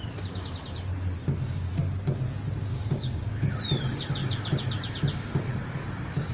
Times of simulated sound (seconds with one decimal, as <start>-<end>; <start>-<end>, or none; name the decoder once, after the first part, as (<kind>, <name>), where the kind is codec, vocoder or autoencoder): 1.2-1.7 (codec, DAC); 2.7-3.5